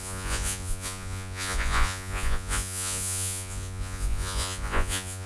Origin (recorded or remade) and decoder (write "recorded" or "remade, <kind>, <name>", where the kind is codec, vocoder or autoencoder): remade, vocoder, Vocos